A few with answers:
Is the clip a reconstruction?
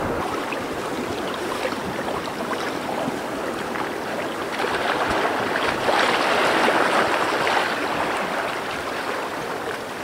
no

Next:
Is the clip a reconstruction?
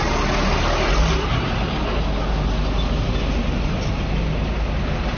no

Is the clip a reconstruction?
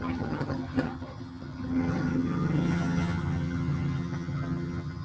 yes